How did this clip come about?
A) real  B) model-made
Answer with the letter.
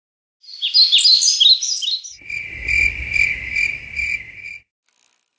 A